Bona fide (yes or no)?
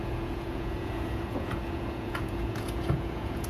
no